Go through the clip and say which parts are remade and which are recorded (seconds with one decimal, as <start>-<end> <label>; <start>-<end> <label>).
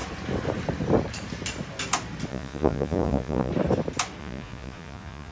0.0-2.3 recorded; 2.3-3.5 remade; 3.5-4.2 recorded; 4.2-5.3 remade